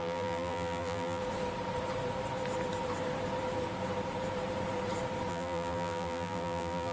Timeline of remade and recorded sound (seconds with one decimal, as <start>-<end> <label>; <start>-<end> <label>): 0.0-1.2 remade; 1.2-5.3 recorded; 5.3-6.9 remade